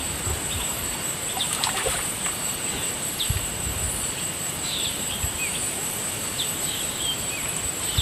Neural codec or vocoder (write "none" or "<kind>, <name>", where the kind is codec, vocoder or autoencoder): vocoder, BigVGAN v2